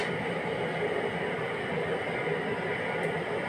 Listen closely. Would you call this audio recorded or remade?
recorded